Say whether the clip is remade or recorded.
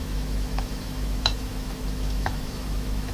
remade